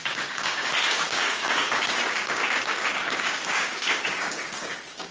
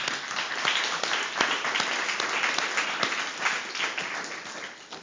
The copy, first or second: first